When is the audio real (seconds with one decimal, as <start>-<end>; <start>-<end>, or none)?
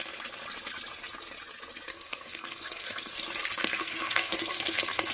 0.0-1.9; 3.2-3.6